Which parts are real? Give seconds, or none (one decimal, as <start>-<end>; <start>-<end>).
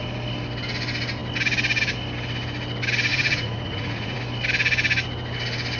0.0-3.1; 4.2-5.8